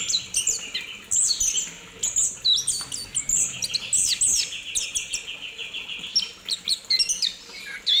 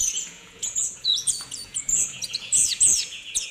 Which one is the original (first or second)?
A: first